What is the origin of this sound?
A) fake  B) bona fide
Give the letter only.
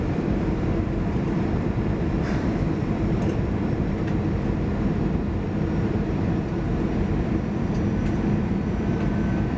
A